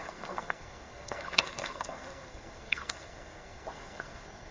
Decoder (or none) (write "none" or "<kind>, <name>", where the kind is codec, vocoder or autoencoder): codec, SNAC